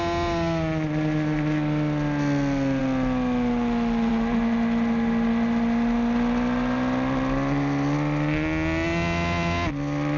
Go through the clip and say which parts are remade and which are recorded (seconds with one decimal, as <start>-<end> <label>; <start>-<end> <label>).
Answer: 0.0-10.2 recorded